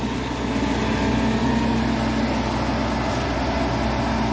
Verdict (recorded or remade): recorded